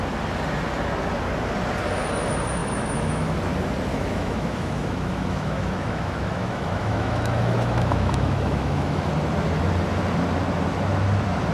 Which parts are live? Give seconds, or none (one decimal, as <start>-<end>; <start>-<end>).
0.0-2.6; 3.4-3.9; 9.1-11.5